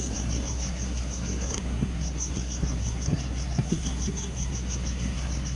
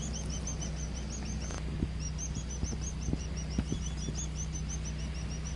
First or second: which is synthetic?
first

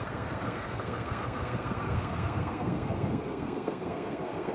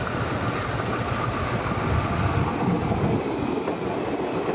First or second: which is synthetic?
first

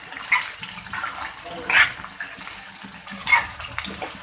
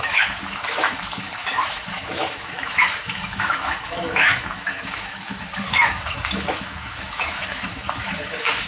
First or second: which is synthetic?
second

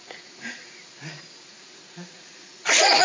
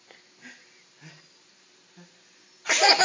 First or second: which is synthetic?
first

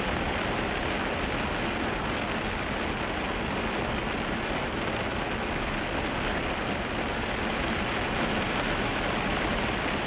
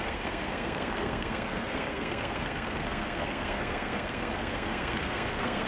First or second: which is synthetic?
second